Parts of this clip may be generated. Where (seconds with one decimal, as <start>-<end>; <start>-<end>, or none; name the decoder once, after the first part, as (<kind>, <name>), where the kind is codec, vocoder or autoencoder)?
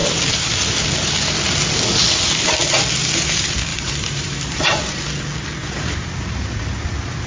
3.7-5.0 (vocoder, BigVGAN v2); 5.6-6.5